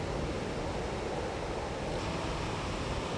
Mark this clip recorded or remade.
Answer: recorded